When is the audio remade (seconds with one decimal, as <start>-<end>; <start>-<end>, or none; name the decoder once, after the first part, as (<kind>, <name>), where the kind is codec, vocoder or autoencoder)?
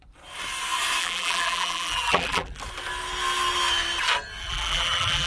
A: 1.0-2.6 (vocoder, BigVGAN v2); 4.4-5.3